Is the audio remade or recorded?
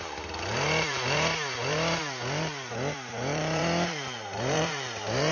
remade